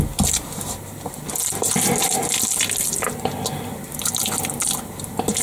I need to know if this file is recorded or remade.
recorded